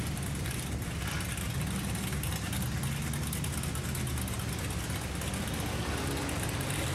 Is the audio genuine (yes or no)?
yes